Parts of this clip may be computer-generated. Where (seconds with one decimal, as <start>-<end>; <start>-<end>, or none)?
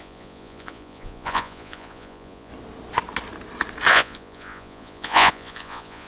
0.0-2.5; 3.9-6.1